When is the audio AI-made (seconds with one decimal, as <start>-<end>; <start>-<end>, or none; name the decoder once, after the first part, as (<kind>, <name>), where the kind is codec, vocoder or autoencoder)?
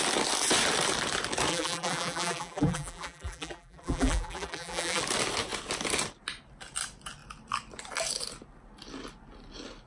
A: 1.5-5.0 (vocoder, BigVGAN v2)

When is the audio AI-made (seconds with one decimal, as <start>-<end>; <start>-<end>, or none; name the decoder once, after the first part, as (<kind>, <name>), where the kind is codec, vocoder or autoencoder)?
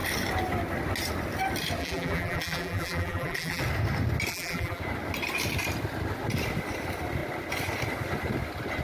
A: 1.8-3.6 (vocoder, BigVGAN v2); 4.3-4.8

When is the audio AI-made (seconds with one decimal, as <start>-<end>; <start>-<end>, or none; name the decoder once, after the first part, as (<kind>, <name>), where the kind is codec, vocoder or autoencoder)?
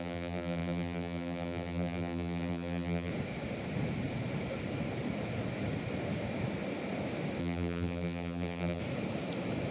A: 0.0-3.1 (vocoder, BigVGAN v2); 7.4-8.8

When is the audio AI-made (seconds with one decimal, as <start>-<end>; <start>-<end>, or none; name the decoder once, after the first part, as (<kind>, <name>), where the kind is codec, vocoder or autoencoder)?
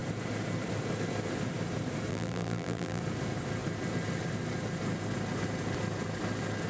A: 2.1-3.0 (vocoder, BigVGAN v2)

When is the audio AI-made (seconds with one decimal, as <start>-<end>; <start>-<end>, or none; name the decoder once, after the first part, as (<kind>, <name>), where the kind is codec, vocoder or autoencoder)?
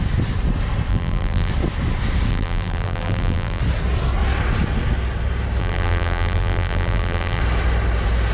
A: 0.9-1.5 (vocoder, BigVGAN v2); 2.3-3.6; 5.6-7.4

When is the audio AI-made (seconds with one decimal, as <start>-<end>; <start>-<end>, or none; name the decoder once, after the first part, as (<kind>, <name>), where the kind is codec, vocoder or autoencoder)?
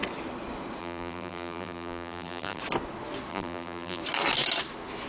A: 0.8-2.6 (vocoder, BigVGAN v2); 3.3-4.0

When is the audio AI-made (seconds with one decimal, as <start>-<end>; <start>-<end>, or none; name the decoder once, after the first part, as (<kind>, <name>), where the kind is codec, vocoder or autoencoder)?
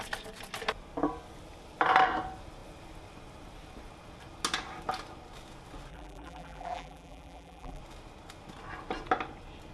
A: 5.9-7.8 (vocoder, BigVGAN v2)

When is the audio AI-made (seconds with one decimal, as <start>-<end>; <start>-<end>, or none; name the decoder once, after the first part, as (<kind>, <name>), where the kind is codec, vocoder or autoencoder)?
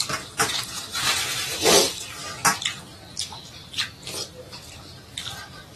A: 0.0-0.8 (vocoder, BigVGAN v2); 4.3-5.8